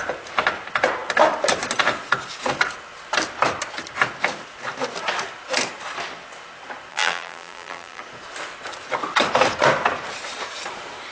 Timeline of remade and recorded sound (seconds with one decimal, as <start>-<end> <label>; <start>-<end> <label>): 0.0-6.9 recorded; 6.9-8.0 remade; 8.0-11.1 recorded